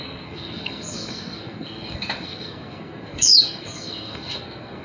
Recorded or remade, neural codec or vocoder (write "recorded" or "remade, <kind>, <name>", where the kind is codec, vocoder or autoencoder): remade, codec, SNAC